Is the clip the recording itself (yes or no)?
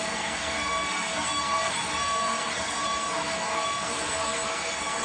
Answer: no